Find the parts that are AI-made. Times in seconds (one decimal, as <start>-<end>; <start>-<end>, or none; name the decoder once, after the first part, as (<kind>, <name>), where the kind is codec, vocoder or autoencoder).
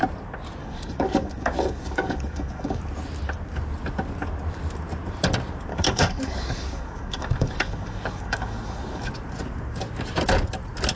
0.6-2.8 (codec, DAC); 5.7-9.1